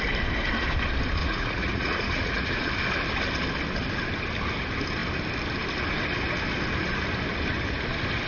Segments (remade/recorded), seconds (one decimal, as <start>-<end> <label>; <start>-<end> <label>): 0.0-1.2 recorded; 1.2-2.7 remade; 2.7-8.3 recorded